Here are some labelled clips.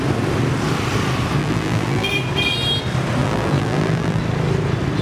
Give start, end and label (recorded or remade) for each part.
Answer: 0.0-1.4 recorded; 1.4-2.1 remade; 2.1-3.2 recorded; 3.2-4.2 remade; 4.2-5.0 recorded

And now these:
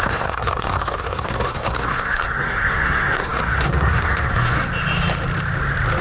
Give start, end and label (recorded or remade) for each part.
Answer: 0.0-4.7 remade; 4.7-6.0 recorded

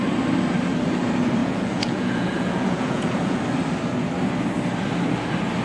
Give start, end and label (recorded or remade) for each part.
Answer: 0.0-1.4 recorded; 1.4-3.4 remade; 3.4-5.6 recorded

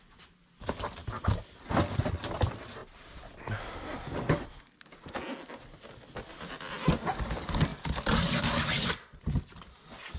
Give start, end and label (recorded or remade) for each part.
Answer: 0.0-2.8 recorded; 2.8-3.7 remade; 3.7-7.7 recorded; 7.7-8.4 remade; 8.4-10.2 recorded

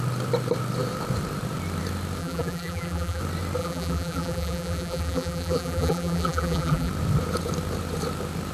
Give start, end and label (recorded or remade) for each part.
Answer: 0.0-2.2 recorded; 2.2-3.2 remade; 3.2-3.6 recorded; 3.6-6.9 remade; 6.9-8.5 recorded